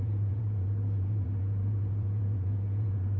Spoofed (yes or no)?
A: yes